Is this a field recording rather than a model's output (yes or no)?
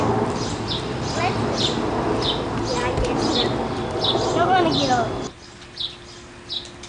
yes